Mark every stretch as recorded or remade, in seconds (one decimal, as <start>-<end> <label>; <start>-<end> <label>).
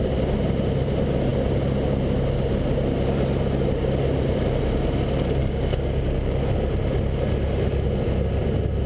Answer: 0.0-5.4 recorded; 5.4-6.4 remade; 6.4-8.9 recorded